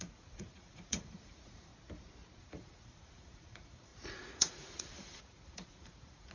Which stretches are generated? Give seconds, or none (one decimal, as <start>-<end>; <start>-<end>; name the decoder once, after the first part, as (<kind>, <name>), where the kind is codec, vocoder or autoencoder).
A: 0.0-1.7 (vocoder, Vocos); 2.4-6.3